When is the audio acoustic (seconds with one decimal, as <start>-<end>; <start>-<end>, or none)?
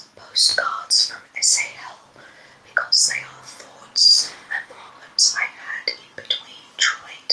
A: 0.0-4.0; 4.9-7.3